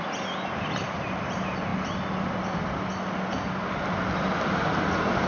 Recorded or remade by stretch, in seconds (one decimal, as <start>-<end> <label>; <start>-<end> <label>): 0.0-5.3 recorded